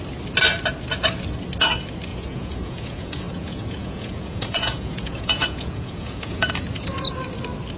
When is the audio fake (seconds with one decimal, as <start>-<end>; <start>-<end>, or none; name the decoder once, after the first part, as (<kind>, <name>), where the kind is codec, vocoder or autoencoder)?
2.1-6.5 (vocoder, Vocos)

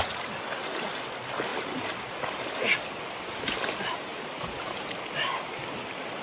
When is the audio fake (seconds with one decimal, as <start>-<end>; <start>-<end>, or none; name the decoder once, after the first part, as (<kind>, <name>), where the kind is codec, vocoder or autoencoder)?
none

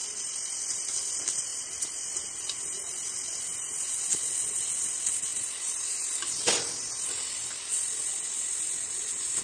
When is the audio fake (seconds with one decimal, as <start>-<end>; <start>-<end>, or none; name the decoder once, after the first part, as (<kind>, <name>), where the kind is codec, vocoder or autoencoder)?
none

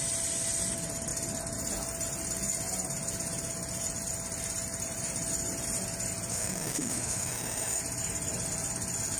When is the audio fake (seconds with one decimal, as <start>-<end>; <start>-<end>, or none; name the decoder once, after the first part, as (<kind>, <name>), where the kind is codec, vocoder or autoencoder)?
6.3-7.8 (autoencoder, DAC-VAE)